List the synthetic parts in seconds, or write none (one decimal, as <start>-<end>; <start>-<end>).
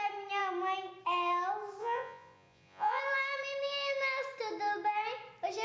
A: 1.8-3.0